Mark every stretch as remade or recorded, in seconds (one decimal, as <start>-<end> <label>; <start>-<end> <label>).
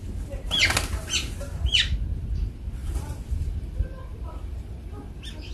0.0-2.8 recorded; 2.8-4.9 remade; 4.9-5.5 recorded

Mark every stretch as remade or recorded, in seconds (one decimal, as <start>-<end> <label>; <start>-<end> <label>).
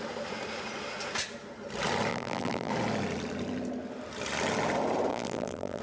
0.0-2.1 recorded; 2.1-2.7 remade; 2.7-5.1 recorded; 5.1-5.8 remade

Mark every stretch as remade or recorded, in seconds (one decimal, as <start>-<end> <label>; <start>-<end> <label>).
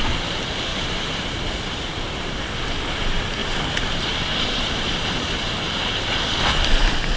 0.0-0.7 recorded; 0.7-2.4 remade; 2.4-3.4 recorded; 3.4-7.2 remade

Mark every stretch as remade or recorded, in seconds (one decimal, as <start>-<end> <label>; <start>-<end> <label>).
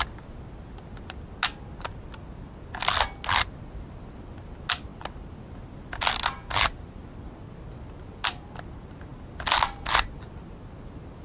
0.0-11.2 recorded